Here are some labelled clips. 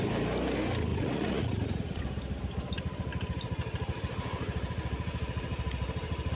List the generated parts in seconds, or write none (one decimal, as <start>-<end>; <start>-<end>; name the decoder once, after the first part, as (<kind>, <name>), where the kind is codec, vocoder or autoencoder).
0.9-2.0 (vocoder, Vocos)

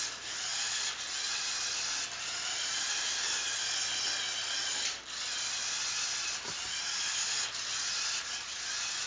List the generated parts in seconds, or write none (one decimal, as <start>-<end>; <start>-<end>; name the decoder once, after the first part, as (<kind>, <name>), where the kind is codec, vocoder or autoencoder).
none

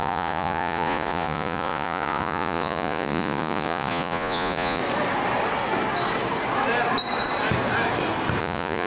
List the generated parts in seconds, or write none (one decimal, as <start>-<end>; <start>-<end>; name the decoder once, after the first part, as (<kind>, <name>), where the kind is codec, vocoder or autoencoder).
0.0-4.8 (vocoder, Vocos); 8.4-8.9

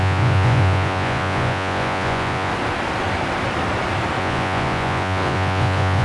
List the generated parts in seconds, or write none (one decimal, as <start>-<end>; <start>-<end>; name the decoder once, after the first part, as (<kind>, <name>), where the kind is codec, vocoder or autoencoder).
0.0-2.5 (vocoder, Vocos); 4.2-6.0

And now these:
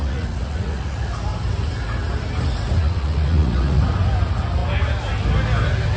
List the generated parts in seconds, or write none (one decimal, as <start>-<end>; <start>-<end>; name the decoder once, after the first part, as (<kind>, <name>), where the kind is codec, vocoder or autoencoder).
0.0-1.1 (vocoder, Vocos); 2.8-3.8

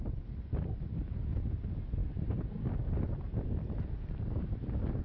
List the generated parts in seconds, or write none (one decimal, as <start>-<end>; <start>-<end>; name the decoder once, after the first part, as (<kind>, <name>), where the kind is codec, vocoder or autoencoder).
none

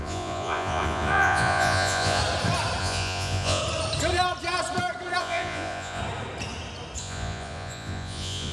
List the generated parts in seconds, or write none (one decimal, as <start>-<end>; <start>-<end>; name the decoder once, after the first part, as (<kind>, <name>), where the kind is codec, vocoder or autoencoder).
0.0-2.2 (vocoder, Vocos); 2.8-3.6; 5.2-6.0; 7.0-8.5

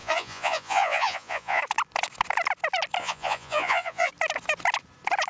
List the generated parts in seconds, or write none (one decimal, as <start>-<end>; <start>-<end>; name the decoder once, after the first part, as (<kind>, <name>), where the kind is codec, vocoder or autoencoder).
0.0-1.6 (vocoder, Vocos); 3.0-4.1